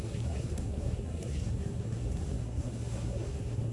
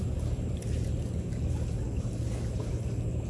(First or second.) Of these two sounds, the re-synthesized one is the first